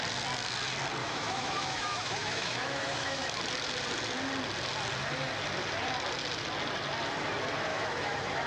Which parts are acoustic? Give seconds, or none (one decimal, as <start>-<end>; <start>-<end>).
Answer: 0.0-1.0; 3.4-7.7